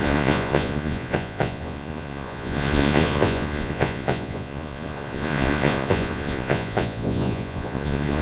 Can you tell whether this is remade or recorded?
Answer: remade